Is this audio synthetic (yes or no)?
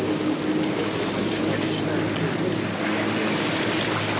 no